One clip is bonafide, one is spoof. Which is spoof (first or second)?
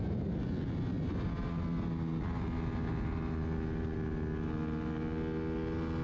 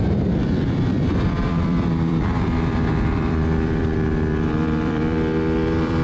second